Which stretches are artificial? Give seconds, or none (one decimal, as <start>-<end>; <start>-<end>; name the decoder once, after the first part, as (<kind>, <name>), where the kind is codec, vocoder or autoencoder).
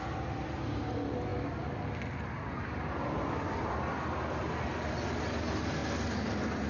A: none